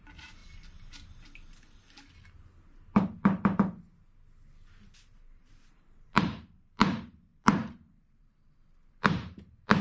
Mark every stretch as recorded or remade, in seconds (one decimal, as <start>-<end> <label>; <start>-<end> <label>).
0.0-0.4 remade; 0.4-5.0 recorded; 5.0-9.8 remade